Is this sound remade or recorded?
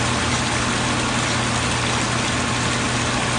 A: recorded